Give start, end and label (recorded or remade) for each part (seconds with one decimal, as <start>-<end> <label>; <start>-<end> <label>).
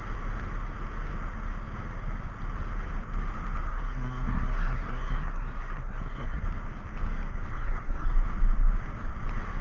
0.0-3.7 recorded; 3.7-6.4 remade; 6.4-7.5 recorded; 7.5-8.1 remade; 8.1-9.6 recorded